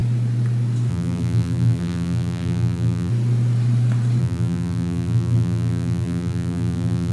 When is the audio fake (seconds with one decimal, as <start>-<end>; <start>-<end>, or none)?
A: 0.9-3.1; 4.2-7.1